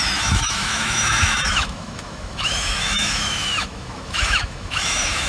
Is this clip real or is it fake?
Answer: fake